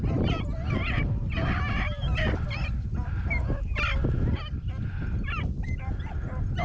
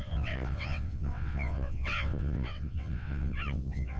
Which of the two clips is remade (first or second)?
second